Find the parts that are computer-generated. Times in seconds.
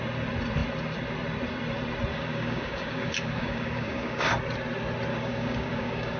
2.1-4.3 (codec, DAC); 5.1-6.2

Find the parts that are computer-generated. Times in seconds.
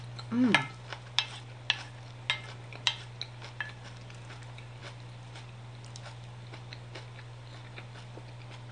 none